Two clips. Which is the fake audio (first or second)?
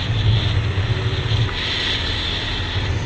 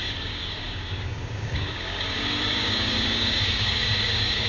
second